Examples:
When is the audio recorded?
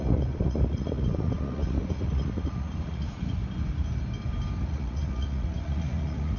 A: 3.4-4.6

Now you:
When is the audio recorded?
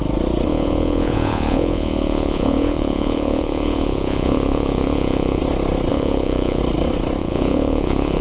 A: 0.0-0.5; 5.4-5.9; 6.6-7.2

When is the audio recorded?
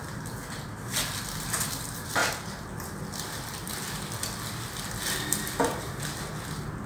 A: 0.0-6.9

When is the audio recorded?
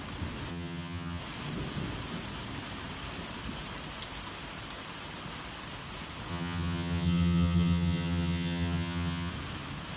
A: 0.0-0.5; 1.2-6.3; 9.3-10.0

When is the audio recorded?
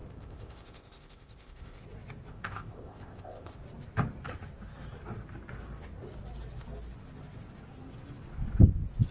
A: 1.8-2.3; 3.6-9.1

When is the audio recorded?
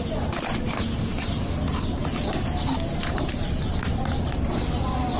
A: 0.0-5.2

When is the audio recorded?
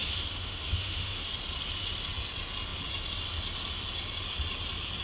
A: 1.3-5.0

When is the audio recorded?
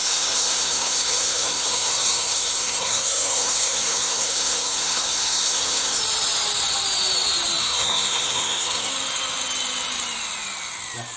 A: 6.0-7.6; 8.9-11.2